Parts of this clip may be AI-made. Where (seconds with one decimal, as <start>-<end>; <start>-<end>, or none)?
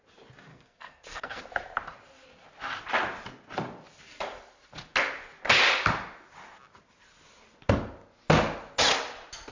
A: 0.5-1.4